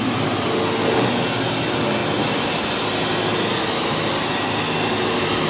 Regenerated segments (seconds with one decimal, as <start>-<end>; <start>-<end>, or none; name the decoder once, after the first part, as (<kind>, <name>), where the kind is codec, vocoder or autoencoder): none